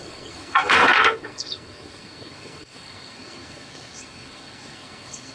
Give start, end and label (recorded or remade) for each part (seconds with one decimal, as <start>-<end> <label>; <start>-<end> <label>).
0.0-5.3 remade